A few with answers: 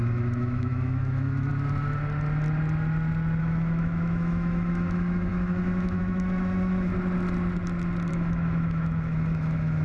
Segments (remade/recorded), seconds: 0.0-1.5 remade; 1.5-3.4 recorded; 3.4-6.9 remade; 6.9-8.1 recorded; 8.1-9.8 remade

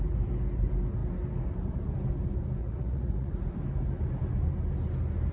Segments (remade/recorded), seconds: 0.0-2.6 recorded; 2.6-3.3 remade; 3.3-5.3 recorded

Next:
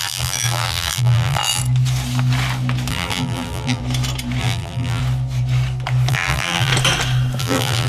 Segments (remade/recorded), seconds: 0.0-1.6 remade; 1.6-2.9 recorded; 2.9-3.8 remade; 3.8-4.4 recorded; 4.4-5.0 remade; 5.0-6.1 recorded; 6.1-6.7 remade; 6.7-7.4 recorded; 7.4-7.9 remade